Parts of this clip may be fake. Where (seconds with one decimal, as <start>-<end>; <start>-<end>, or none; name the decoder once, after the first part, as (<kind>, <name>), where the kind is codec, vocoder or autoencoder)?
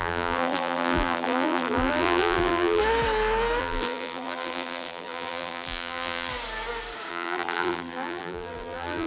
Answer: 0.0-2.8 (vocoder, BigVGAN v2); 3.6-6.3; 7.1-9.1